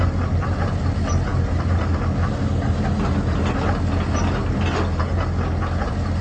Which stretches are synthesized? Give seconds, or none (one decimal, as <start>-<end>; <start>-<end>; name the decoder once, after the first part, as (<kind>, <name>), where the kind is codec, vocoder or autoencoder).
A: none